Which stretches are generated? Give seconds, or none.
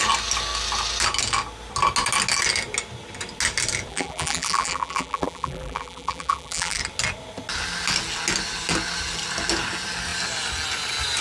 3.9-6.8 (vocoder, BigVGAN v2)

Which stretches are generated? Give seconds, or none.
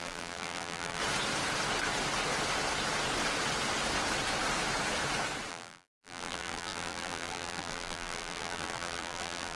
0.0-1.0 (vocoder, BigVGAN v2); 5.5-9.6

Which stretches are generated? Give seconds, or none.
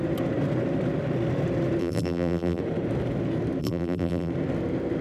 1.8-2.6 (vocoder, BigVGAN v2); 3.6-4.3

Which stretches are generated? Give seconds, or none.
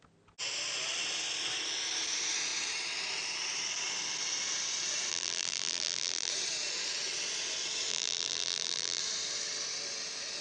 5.1-6.3 (vocoder, BigVGAN v2); 7.9-9.0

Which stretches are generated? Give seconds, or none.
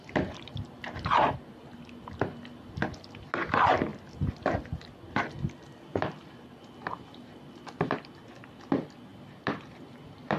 3.9-4.9 (vocoder, BigVGAN v2); 9.1-9.7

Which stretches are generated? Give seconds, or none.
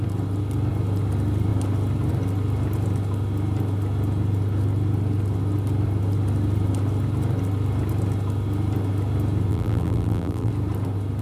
9.5-10.5 (vocoder, BigVGAN v2)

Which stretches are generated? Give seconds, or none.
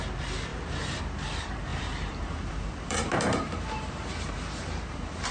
0.5-1.0 (vocoder, BigVGAN v2); 1.7-5.3